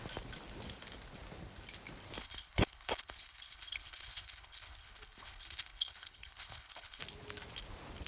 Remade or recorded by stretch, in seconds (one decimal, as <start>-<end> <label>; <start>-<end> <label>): 0.0-2.2 recorded; 2.2-7.0 remade; 7.0-8.1 recorded